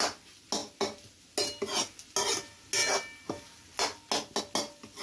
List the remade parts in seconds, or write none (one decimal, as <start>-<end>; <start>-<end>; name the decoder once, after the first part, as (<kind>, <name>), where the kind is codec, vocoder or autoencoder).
none